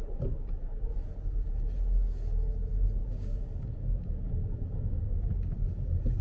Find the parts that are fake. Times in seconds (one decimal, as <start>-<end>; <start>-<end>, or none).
3.0-5.3